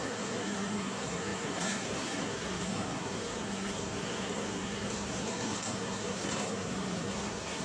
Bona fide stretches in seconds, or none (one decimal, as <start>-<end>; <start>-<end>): none